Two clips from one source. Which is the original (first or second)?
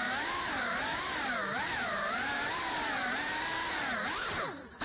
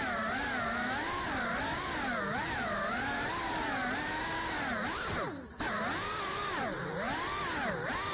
second